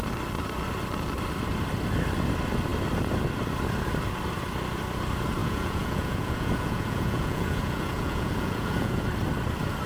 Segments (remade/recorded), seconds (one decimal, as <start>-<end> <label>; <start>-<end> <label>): 0.0-5.4 recorded; 5.4-9.0 remade; 9.0-9.9 recorded